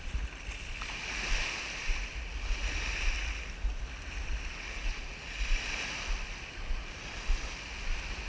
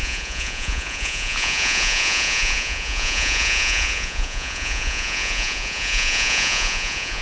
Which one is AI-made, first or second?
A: second